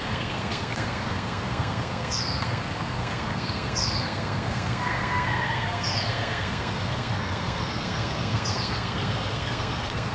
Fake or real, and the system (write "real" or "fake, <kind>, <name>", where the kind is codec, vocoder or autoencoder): fake, codec, SNAC